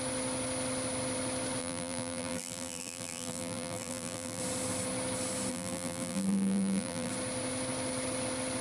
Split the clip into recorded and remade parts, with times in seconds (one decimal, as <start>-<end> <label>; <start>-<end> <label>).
0.0-1.6 recorded; 1.6-4.4 remade; 4.4-5.5 recorded; 5.5-7.1 remade; 7.1-8.6 recorded